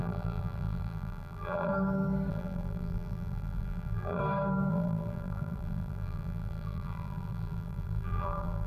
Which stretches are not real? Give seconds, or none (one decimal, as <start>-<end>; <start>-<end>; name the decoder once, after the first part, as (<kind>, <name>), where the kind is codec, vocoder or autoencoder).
0.0-1.7 (vocoder, BigVGAN v2); 2.3-4.2; 4.7-8.7

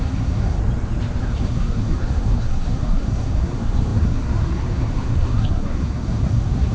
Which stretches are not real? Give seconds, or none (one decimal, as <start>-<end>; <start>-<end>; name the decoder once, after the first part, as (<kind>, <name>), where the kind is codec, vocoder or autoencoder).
0.0-0.6 (codec, SNAC); 1.2-6.7

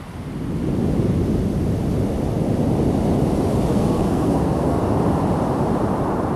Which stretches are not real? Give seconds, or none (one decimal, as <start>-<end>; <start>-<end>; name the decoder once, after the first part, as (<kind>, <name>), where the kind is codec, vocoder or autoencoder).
3.7-4.8 (codec, SNAC)

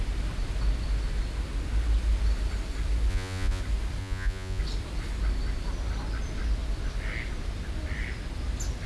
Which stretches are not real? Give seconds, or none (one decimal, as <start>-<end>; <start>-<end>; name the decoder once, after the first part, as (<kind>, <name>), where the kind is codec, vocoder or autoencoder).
3.1-3.6 (vocoder, Vocos); 4.0-4.6

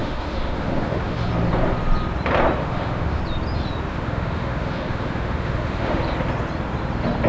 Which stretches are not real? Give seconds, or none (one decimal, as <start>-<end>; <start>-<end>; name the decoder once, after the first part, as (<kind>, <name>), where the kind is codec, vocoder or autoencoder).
0.0-1.3 (autoencoder, DAC-VAE); 2.6-3.2; 3.9-6.0

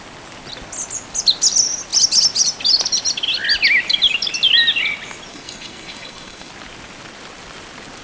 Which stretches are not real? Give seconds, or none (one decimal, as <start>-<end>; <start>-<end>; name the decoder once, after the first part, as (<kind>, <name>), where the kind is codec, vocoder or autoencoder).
5.3-6.5 (codec, SNAC)